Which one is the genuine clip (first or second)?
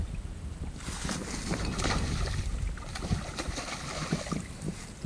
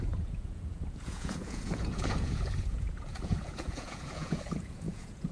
first